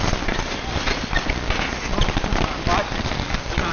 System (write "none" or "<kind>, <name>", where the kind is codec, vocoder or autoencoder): none